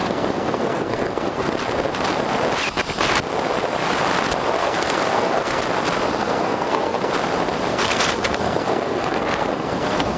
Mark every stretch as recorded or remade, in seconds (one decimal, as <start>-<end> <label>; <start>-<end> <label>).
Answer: 0.0-1.5 remade; 1.5-4.6 recorded; 4.6-5.6 remade; 5.6-6.2 recorded; 6.2-7.1 remade; 7.1-7.7 recorded; 7.7-10.2 remade